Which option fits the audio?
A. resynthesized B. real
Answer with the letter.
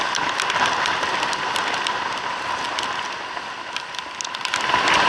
B